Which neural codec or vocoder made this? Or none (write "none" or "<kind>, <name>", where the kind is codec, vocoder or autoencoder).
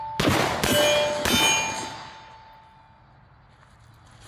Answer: none